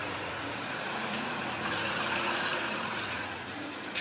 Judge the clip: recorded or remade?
remade